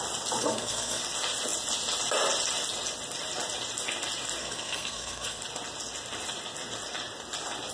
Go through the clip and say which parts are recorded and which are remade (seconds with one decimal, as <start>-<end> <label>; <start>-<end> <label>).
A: 0.0-0.4 recorded; 0.4-1.0 remade; 1.0-4.4 recorded; 4.4-5.4 remade; 5.4-7.7 recorded